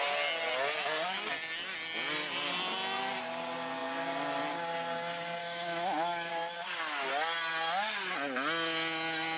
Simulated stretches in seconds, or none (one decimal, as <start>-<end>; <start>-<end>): 5.4-6.3